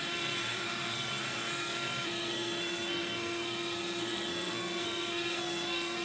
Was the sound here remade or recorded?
remade